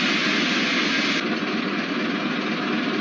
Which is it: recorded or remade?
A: recorded